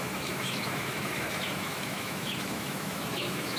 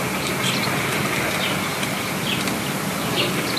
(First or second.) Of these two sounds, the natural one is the second